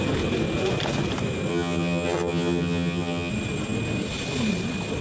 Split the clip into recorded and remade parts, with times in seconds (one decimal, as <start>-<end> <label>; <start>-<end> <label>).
0.0-1.5 recorded; 1.5-3.3 remade; 3.3-5.0 recorded